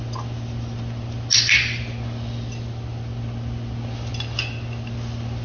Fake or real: real